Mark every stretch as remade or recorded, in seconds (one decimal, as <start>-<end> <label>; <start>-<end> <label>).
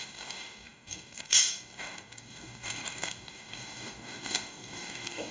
0.0-5.3 remade